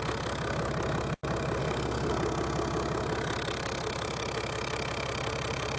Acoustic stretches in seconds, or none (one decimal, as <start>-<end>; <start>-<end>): 0.0-1.6; 2.1-5.8